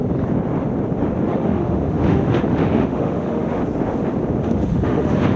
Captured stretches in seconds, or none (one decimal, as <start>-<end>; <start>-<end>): 0.0-1.3; 3.6-4.4